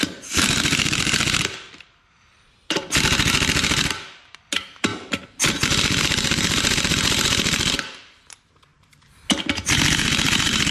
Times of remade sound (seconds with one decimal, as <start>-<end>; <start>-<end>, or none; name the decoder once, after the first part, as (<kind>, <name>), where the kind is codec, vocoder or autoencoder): 0.0-10.7 (vocoder, BigVGAN v2)